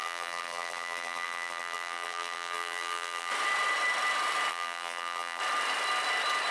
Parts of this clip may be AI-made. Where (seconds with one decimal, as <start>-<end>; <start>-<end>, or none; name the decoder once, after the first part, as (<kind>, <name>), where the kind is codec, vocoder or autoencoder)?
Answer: 0.0-3.3 (vocoder, BigVGAN v2); 4.5-5.4

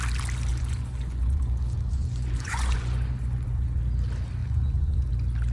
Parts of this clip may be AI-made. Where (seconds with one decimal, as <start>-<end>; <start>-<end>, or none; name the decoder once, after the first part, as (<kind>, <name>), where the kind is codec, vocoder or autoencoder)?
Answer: 0.5-3.8 (vocoder, Vocos); 4.4-5.1